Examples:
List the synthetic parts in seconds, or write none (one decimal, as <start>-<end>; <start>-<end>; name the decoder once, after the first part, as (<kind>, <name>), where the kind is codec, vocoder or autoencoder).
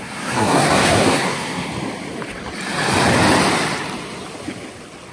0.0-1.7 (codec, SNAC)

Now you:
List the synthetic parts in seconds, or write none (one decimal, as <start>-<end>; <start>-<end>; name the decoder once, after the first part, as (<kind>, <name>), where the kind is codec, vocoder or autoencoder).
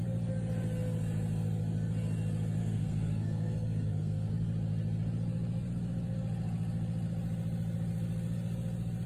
2.6-4.3 (codec, SNAC)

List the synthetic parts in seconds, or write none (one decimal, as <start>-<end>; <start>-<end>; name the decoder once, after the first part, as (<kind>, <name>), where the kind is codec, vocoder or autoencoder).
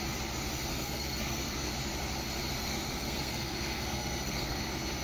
0.7-1.7 (codec, SNAC); 2.5-4.6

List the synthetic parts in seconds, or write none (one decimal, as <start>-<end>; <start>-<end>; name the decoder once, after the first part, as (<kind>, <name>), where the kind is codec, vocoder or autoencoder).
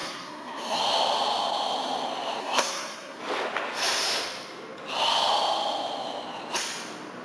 0.0-0.8 (codec, SNAC); 2.4-3.2